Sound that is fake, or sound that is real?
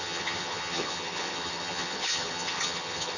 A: fake